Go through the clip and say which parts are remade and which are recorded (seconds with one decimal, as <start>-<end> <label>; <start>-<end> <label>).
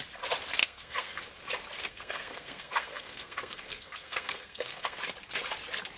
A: 0.0-0.6 recorded; 0.6-1.2 remade; 1.2-1.9 recorded; 1.9-5.0 remade; 5.0-6.0 recorded